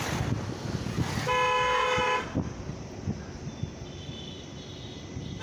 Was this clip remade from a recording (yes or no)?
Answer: no